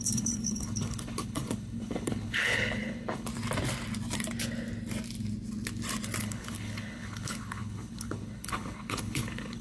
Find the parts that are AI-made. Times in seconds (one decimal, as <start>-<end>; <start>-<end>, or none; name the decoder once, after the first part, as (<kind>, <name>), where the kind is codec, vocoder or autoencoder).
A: 0.0-3.3 (codec, HILCodec); 6.2-9.6